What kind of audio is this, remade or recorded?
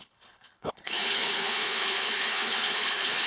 remade